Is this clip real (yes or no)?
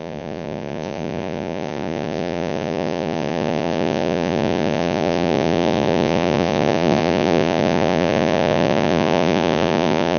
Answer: no